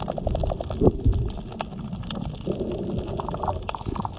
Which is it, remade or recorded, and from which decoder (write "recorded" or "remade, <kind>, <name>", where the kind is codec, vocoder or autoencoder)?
recorded